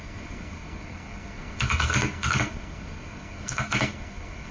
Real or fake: fake